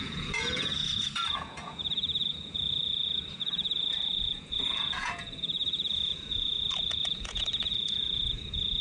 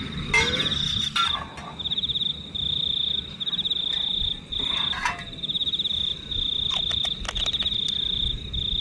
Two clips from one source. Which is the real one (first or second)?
second